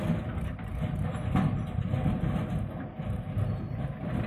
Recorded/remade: recorded